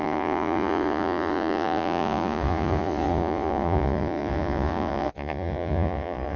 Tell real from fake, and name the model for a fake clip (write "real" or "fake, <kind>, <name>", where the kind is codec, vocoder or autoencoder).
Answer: fake, vocoder, Vocos